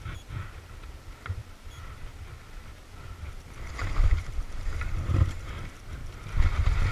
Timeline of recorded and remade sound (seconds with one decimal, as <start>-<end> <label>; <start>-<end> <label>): 0.0-1.4 remade; 1.4-3.7 recorded; 3.7-6.0 remade; 6.0-6.9 recorded